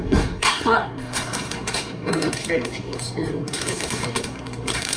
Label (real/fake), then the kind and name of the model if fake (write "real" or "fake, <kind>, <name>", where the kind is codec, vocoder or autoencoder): fake, codec, SNAC